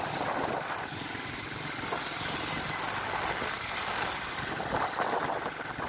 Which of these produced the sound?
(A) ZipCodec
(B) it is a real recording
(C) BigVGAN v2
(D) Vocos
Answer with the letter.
B